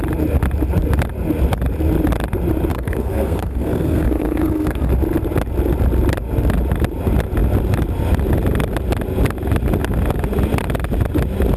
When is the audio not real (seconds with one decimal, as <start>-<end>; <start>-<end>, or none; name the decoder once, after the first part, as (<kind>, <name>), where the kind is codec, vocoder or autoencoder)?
2.7-4.9 (codec, SNAC)